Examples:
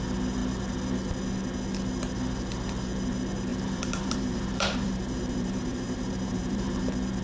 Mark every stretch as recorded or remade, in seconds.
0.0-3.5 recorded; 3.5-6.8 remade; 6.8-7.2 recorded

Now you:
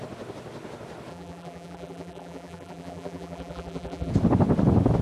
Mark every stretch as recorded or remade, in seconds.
0.0-1.1 recorded; 1.1-4.1 remade; 4.1-5.0 recorded